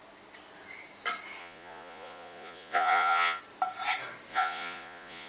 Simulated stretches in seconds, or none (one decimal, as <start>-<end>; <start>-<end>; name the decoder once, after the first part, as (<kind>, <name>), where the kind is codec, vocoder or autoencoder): 1.4-3.4 (vocoder, Vocos); 4.3-5.3